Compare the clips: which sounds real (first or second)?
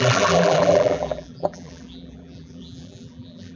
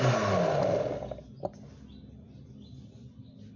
second